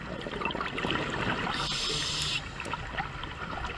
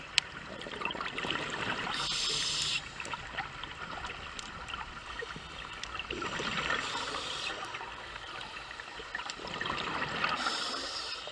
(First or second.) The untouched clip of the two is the first